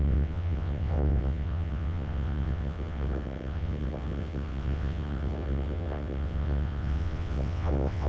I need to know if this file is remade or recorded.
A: remade